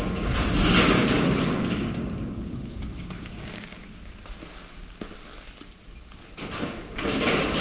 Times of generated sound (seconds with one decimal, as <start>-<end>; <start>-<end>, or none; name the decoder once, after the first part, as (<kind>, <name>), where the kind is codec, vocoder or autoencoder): 0.0-4.4 (codec, DAC); 6.6-7.6